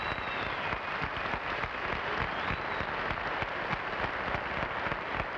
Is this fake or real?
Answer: real